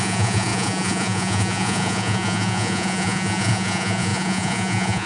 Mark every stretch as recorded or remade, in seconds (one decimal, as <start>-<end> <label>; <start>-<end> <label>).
0.0-5.1 remade